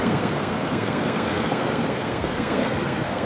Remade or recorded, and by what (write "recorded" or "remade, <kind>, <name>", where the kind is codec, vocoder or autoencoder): remade, codec, SNAC